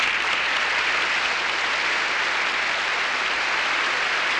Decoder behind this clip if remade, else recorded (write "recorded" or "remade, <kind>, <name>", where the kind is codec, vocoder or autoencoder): recorded